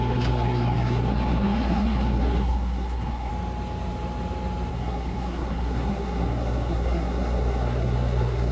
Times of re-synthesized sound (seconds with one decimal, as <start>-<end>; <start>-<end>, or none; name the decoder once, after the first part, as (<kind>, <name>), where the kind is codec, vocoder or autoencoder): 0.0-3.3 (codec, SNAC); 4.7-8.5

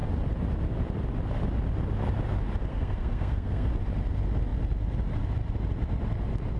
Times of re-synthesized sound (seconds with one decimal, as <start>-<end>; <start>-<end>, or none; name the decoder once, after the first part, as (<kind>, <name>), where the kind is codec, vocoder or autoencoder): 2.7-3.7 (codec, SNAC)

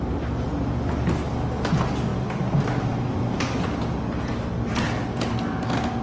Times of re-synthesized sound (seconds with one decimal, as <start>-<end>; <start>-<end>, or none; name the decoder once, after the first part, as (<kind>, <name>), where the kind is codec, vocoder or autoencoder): none

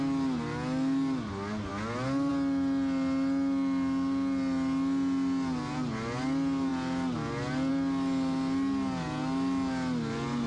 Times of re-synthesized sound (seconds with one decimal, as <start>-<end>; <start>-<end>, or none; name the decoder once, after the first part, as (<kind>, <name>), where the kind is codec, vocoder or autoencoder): none

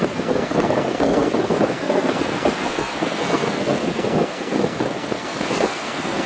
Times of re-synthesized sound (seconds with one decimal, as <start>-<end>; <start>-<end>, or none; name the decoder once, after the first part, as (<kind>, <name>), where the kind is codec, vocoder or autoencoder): 0.0-6.3 (codec, SNAC)

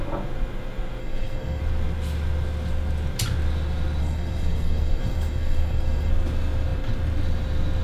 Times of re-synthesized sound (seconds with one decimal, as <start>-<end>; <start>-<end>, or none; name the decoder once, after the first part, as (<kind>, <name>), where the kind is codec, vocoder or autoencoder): 1.0-1.6 (codec, SNAC); 4.0-6.1